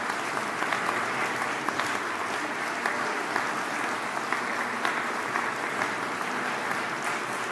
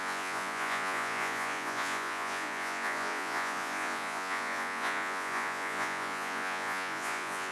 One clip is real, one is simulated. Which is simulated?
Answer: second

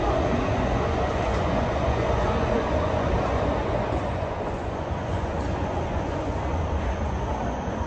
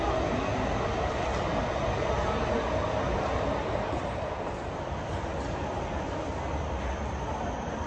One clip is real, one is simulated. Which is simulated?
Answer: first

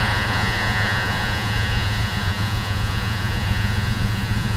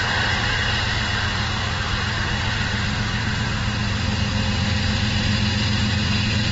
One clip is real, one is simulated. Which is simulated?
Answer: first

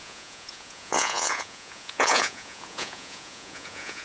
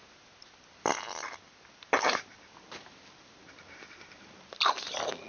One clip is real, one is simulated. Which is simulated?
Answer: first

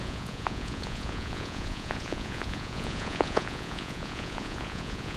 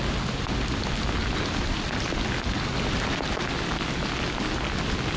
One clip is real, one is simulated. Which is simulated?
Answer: first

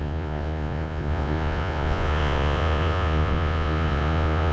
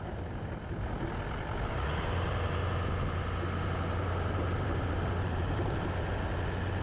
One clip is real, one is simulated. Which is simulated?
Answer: first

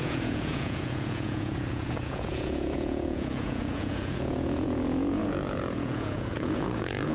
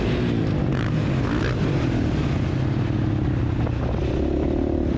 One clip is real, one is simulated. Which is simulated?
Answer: first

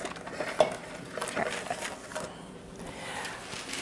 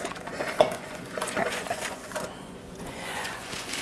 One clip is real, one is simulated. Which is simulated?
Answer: second